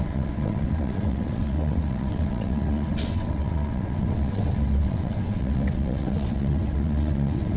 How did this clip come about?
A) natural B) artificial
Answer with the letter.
B